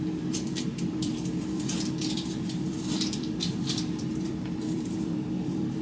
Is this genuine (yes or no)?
no